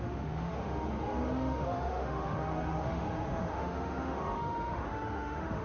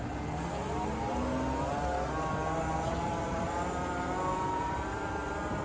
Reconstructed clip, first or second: first